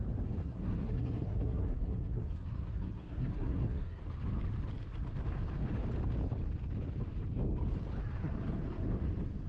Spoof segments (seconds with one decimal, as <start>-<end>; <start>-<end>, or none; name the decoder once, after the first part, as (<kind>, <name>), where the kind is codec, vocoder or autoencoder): 0.4-4.0 (codec, SNAC)